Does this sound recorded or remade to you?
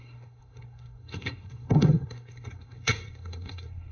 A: remade